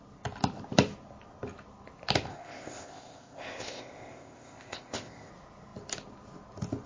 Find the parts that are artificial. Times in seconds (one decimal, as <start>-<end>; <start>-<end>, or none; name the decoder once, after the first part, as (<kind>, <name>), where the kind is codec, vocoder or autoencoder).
2.3-5.3 (codec, ZipCodec)